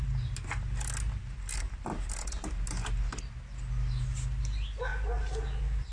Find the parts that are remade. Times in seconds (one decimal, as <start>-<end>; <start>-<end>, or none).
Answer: none